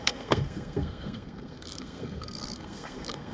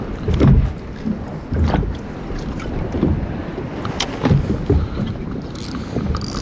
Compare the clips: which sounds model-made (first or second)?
first